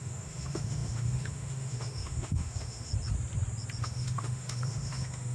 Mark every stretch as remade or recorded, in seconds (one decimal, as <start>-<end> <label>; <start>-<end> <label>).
0.0-2.9 remade; 2.9-3.8 recorded; 3.8-5.3 remade